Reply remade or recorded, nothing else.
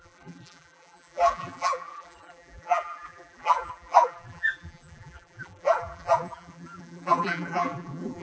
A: remade